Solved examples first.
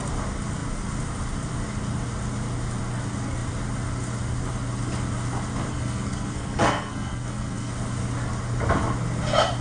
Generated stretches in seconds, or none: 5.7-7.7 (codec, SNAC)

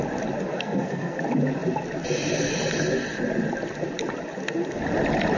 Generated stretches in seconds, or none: 0.5-1.2 (codec, SNAC)

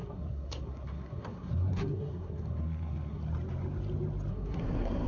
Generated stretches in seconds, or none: 0.0-3.2 (codec, SNAC); 4.3-5.1

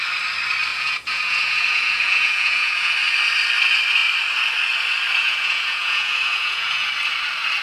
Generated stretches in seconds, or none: 0.7-2.9 (vocoder, Vocos); 5.2-6.9

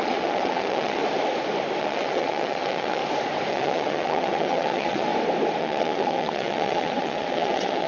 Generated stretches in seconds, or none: 0.0-1.0 (vocoder, WaveNeXt); 1.8-3.0; 3.5-5.1; 5.6-7.9

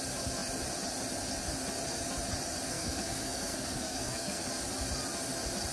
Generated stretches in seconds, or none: 2.7-4.5 (codec, SNAC)

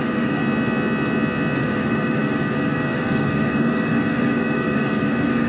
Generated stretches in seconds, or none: 0.0-0.4 (codec, DAC); 1.6-5.5